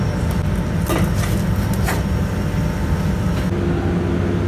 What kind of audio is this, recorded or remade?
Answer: recorded